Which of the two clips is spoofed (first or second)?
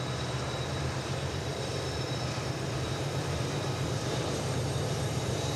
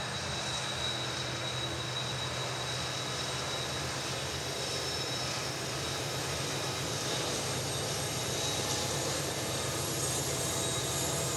first